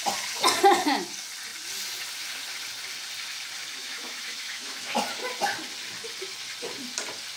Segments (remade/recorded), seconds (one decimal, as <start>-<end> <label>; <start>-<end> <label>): 0.0-3.8 recorded; 3.8-5.0 remade; 5.0-7.4 recorded